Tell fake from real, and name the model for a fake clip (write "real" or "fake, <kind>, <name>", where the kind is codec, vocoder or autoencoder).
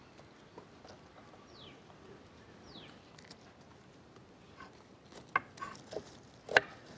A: real